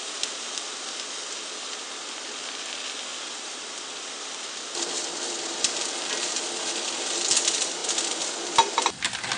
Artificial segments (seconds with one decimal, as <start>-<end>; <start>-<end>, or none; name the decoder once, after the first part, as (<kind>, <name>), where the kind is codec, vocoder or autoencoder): 3.1-6.1 (vocoder, BigVGAN v2)